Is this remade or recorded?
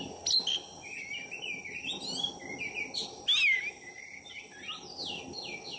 recorded